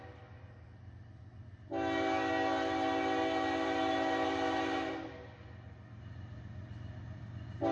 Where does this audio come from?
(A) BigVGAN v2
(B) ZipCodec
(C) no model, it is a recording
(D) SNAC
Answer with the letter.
C